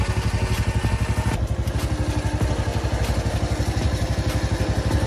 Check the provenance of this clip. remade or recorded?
recorded